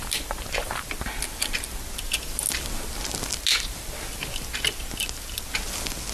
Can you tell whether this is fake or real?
real